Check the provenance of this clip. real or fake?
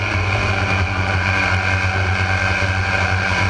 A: fake